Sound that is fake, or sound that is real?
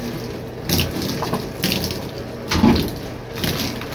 real